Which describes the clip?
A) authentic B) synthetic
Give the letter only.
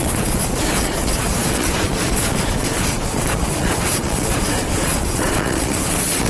B